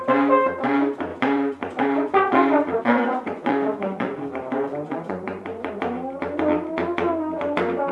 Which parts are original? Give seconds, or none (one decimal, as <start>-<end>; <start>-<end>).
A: 0.0-1.1; 4.2-4.7; 5.7-7.9